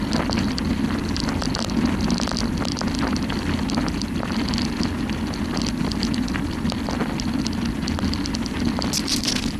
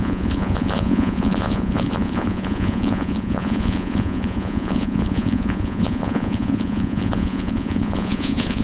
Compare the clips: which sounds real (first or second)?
first